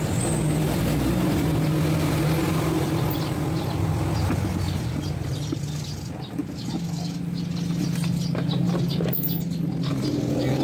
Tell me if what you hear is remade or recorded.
recorded